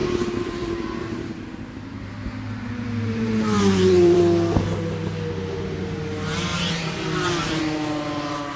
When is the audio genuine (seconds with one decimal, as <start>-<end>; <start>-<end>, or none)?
4.2-6.5; 7.6-8.6